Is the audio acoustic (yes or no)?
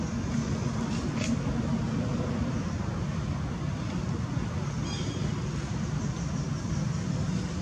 yes